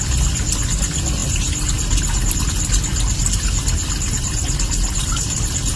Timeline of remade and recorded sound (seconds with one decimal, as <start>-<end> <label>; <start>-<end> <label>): 0.0-5.8 recorded